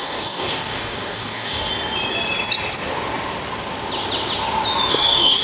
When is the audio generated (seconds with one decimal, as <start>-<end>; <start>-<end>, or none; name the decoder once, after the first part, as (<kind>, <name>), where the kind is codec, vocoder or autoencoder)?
0.0-1.7 (codec, DAC); 4.9-5.4